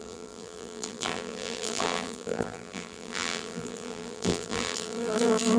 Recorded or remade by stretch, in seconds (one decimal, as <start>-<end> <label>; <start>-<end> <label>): 0.0-5.6 remade